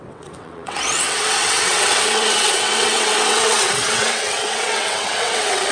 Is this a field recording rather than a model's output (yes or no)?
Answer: no